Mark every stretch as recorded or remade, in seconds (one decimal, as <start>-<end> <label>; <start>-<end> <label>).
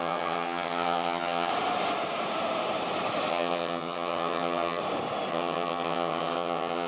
0.0-1.5 remade; 1.5-3.3 recorded; 3.3-4.8 remade; 4.8-5.3 recorded; 5.3-6.9 remade